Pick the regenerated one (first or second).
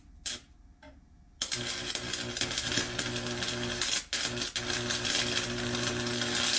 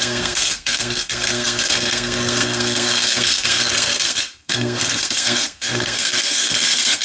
second